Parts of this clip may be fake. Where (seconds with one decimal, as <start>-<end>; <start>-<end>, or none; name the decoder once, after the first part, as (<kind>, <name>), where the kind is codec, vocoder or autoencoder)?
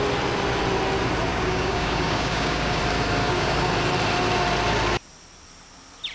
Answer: 1.3-2.8 (codec, DAC); 3.2-3.7